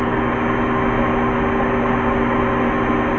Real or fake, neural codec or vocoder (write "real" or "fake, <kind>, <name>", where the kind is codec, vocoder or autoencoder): real